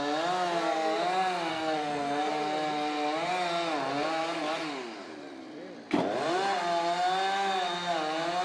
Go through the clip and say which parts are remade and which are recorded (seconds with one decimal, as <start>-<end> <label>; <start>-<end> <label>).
0.0-1.5 recorded; 1.5-2.3 remade; 2.3-8.4 recorded